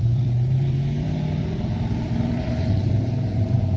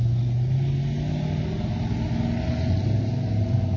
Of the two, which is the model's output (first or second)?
first